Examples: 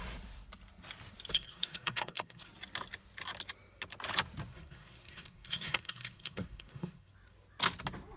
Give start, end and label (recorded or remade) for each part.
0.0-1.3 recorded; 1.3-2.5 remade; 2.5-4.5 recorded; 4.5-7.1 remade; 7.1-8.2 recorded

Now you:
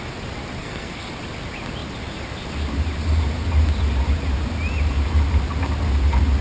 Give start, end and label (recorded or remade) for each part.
0.0-0.6 recorded; 0.6-1.1 remade; 1.1-6.4 recorded

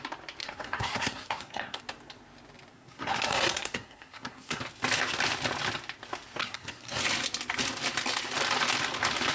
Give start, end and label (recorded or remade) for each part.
0.0-0.4 recorded; 0.4-1.8 remade; 1.8-2.7 recorded; 2.7-4.6 remade; 4.6-6.4 recorded; 6.4-7.0 remade; 7.0-9.3 recorded